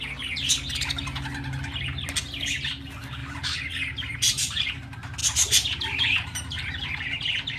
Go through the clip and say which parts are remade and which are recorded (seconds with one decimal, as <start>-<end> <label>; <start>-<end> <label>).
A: 0.0-3.2 recorded; 3.2-4.7 remade; 4.7-5.2 recorded; 5.2-7.0 remade; 7.0-7.6 recorded